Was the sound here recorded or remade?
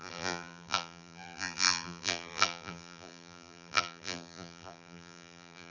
remade